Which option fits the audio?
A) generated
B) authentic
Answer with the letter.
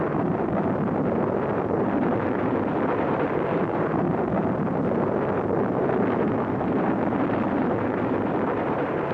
A